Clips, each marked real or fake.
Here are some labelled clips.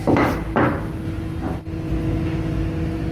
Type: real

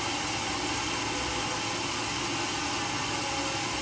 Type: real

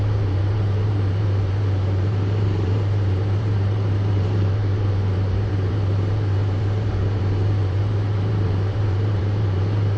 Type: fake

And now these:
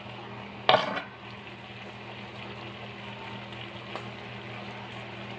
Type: real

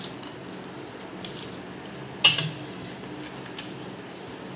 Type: real